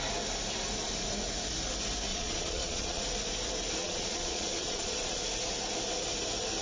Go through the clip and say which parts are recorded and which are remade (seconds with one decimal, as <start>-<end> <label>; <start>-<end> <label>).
0.0-2.1 recorded; 2.1-3.0 remade; 3.0-3.8 recorded; 3.8-5.2 remade; 5.2-6.6 recorded